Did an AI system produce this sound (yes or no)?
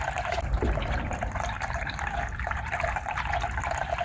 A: no